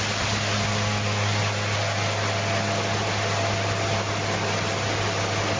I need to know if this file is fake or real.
real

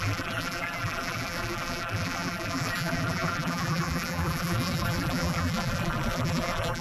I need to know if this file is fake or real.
fake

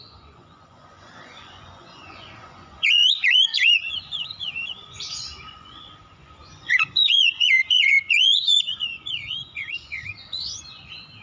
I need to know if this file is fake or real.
fake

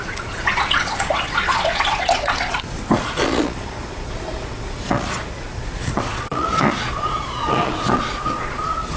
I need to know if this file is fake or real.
fake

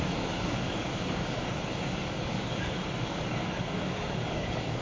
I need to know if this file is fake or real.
fake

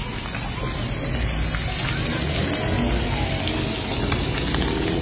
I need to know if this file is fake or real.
real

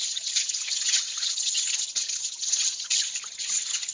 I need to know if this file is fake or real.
fake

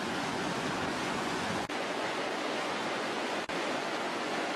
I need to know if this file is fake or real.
fake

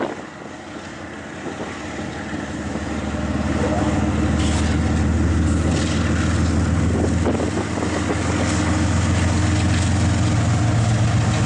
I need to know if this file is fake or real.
real